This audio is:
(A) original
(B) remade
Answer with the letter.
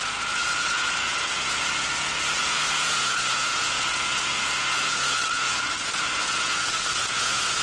B